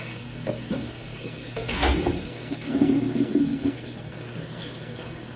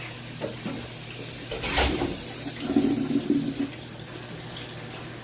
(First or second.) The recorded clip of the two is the second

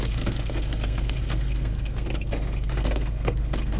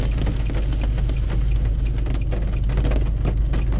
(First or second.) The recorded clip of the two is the second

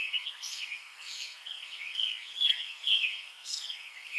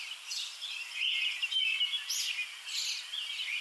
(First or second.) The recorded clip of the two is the second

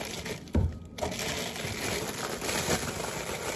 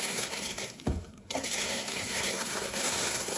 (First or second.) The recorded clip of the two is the first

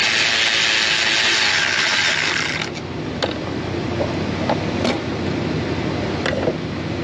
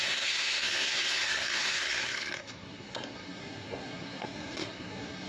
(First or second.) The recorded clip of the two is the first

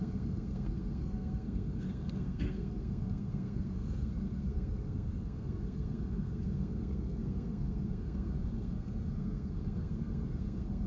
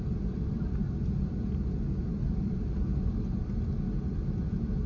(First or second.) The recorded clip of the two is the second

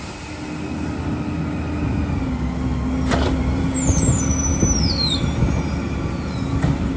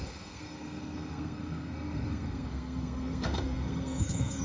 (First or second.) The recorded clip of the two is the first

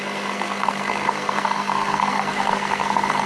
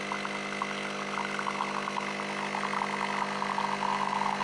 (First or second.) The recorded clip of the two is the second